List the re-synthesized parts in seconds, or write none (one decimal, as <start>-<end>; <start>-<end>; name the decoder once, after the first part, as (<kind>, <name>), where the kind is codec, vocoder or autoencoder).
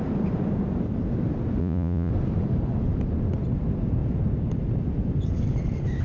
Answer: 1.6-2.1 (vocoder, Vocos)